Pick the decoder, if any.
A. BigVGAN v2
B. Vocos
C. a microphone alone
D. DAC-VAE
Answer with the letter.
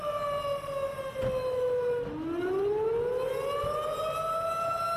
C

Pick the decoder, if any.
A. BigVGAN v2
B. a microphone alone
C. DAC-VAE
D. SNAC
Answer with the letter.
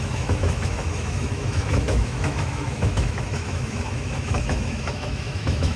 C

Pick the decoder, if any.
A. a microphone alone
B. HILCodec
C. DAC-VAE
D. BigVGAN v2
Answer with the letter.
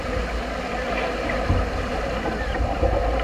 A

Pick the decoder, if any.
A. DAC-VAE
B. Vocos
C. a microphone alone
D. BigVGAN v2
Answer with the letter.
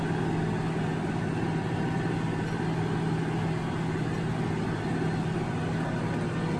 C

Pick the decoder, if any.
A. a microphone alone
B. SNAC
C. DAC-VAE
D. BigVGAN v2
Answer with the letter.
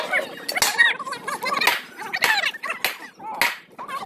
A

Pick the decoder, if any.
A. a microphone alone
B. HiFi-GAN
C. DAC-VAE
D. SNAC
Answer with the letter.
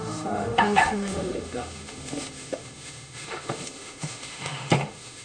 C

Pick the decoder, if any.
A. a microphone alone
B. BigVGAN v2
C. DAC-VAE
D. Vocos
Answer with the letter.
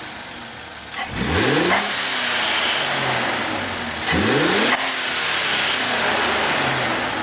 A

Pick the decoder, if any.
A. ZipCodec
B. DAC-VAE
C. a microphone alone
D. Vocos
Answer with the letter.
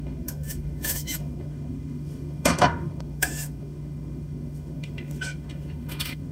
B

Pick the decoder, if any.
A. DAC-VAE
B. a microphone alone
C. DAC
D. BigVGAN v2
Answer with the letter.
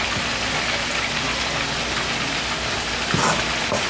B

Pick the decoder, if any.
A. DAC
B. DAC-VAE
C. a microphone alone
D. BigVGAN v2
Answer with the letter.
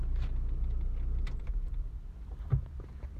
C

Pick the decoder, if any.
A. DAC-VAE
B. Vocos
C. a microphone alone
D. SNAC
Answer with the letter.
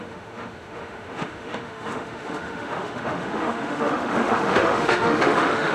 A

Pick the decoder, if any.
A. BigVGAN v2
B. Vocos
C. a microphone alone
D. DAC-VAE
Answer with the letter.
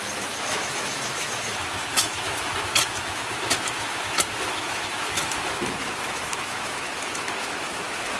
D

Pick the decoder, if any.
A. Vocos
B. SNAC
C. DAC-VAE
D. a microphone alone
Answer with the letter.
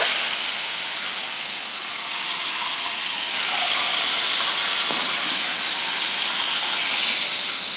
D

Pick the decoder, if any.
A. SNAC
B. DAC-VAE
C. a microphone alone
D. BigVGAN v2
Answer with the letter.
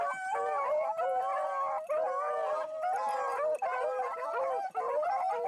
C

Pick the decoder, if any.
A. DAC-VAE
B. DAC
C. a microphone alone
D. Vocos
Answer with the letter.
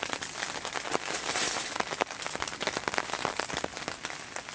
C